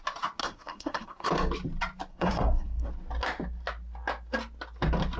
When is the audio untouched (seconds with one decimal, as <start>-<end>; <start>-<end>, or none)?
0.0-0.4; 1.3-2.1; 2.9-5.2